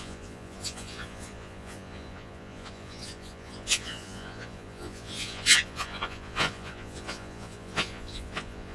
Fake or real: fake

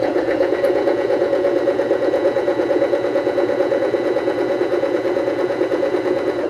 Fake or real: fake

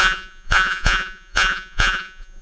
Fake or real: fake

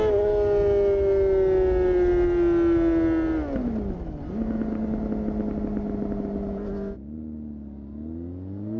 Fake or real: real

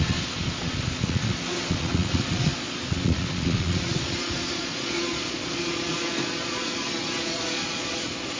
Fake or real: fake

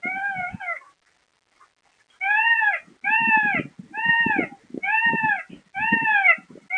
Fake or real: real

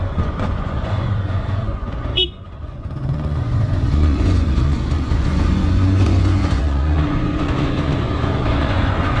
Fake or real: fake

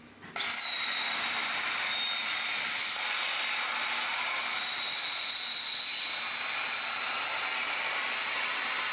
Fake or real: real